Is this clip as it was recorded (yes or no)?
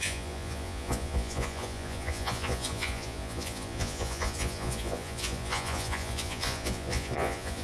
no